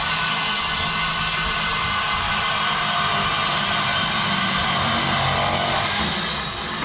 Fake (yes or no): no